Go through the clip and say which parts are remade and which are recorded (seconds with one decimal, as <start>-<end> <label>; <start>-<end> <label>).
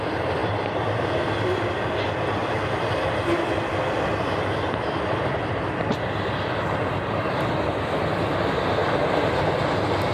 0.0-0.4 recorded; 0.4-1.2 remade; 1.2-2.4 recorded; 2.4-7.4 remade; 7.4-8.8 recorded; 8.8-9.4 remade; 9.4-10.1 recorded